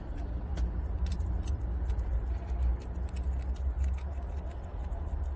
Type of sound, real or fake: real